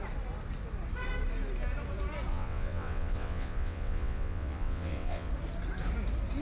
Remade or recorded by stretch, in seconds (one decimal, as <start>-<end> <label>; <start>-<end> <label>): 0.0-2.3 recorded; 2.3-5.3 remade; 5.3-6.4 recorded